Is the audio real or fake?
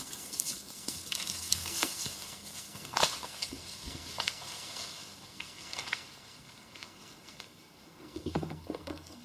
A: fake